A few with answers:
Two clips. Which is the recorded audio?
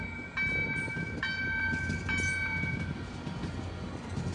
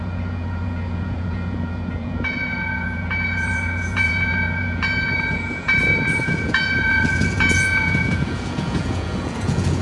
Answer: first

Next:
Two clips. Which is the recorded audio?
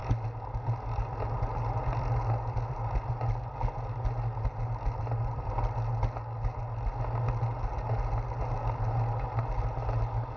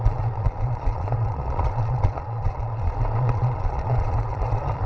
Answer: first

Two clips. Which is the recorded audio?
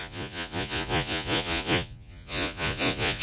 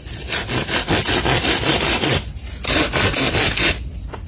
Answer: second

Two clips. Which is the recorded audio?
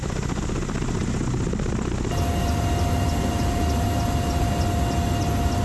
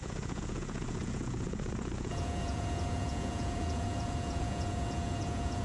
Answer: first